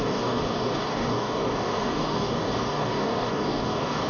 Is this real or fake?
fake